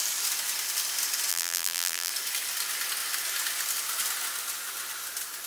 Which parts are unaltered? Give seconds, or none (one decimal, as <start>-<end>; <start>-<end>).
0.0-1.3; 2.1-5.5